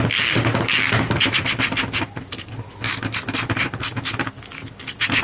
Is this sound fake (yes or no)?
no